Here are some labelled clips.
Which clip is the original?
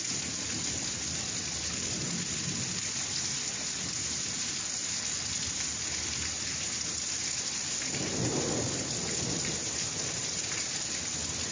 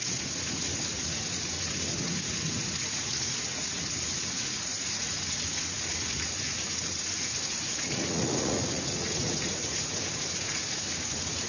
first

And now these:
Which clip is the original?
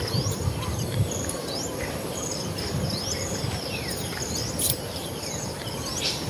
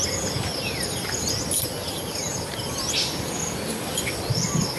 second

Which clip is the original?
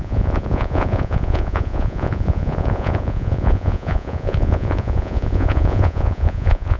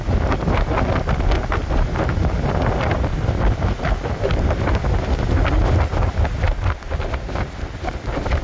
second